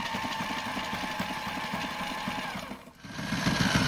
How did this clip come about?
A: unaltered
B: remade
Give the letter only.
A